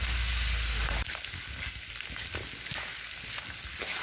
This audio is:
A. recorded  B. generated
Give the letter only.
A